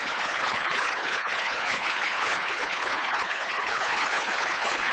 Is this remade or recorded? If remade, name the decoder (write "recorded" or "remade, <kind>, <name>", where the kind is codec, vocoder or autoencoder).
remade, codec, HILCodec